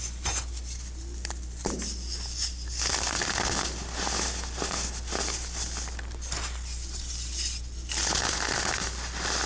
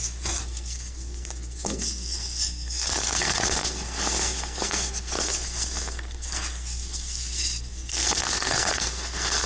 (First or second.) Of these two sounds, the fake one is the second